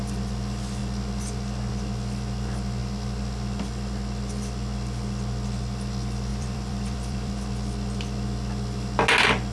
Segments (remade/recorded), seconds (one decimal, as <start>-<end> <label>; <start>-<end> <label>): 0.0-6.3 recorded; 6.3-7.3 remade; 7.3-9.5 recorded